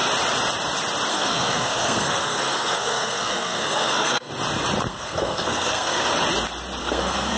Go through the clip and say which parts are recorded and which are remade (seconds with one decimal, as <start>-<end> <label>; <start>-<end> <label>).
0.0-1.1 recorded; 1.1-4.3 remade; 4.3-4.9 recorded; 4.9-6.1 remade; 6.1-6.8 recorded; 6.8-7.4 remade